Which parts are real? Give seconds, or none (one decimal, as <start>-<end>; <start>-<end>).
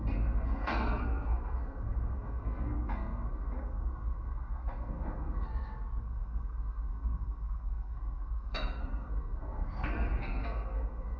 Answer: 5.5-6.0